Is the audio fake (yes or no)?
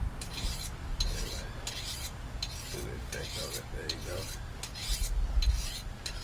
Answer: no